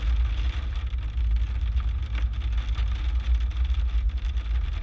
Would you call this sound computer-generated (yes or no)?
no